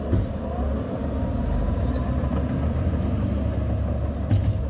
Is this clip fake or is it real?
real